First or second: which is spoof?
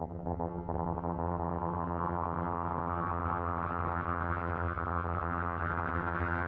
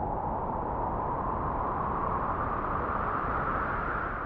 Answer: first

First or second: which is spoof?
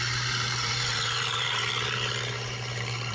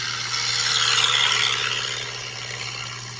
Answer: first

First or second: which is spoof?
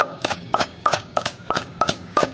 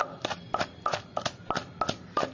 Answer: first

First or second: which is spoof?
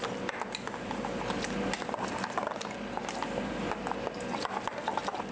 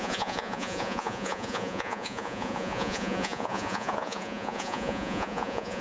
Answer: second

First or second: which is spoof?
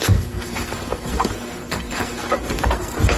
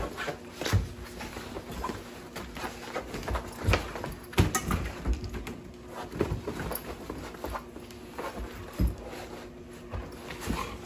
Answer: first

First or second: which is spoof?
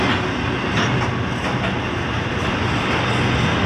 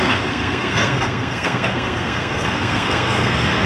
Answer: second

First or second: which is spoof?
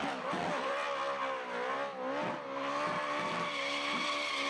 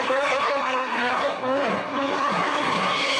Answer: second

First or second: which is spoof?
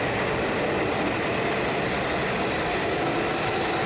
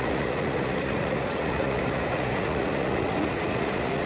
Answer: second